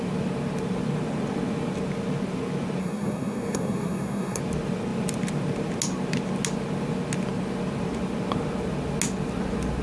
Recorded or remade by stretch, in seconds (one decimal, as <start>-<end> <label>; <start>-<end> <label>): 0.0-2.8 recorded; 2.8-4.4 remade; 4.4-9.8 recorded